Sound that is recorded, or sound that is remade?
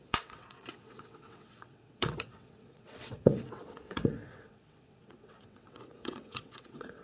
remade